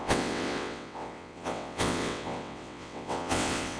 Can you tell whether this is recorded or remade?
remade